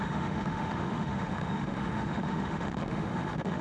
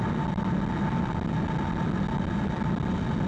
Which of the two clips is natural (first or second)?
second